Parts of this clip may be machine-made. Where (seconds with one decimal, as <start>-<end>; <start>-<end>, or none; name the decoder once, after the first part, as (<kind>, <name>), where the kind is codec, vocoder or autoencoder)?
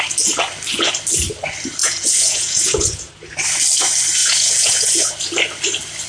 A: 1.8-3.1 (vocoder, Vocos); 4.2-5.0